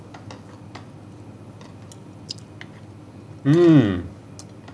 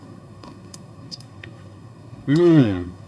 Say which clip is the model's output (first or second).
second